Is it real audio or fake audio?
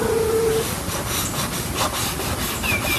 real